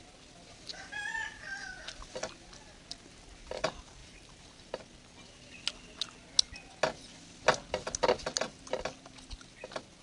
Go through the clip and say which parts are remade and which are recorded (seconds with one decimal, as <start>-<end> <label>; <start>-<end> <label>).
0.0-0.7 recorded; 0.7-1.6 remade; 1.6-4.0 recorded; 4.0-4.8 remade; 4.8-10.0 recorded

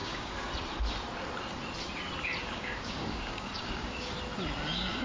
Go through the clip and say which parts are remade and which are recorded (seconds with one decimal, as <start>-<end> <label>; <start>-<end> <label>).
0.0-0.5 remade; 0.5-2.4 recorded; 2.4-4.2 remade; 4.2-5.0 recorded

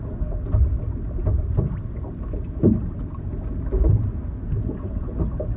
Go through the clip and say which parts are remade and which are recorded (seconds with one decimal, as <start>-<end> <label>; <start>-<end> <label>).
0.0-4.1 recorded; 4.1-4.6 remade; 4.6-5.6 recorded

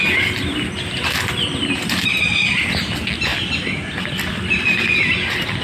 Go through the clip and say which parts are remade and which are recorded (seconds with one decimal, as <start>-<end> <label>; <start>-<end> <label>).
0.0-2.1 recorded; 2.1-2.6 remade; 2.6-3.3 recorded; 3.3-4.2 remade; 4.2-5.6 recorded

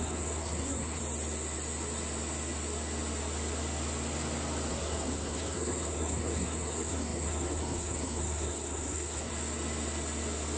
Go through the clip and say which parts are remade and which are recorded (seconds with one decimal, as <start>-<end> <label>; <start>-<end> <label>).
0.0-1.0 remade; 1.0-4.7 recorded; 4.7-9.3 remade; 9.3-10.6 recorded

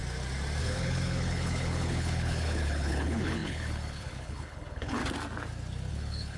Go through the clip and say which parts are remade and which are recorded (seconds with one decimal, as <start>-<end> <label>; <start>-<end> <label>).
0.0-0.6 recorded; 0.6-5.0 remade; 5.0-5.9 recorded; 5.9-6.4 remade

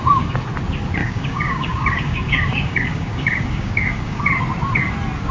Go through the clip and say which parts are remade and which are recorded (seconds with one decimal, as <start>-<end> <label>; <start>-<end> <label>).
0.0-1.0 recorded; 1.0-4.2 remade; 4.2-5.3 recorded

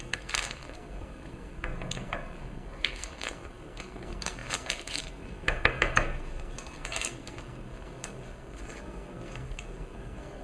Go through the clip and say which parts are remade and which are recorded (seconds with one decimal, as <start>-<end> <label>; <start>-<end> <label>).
0.0-10.4 remade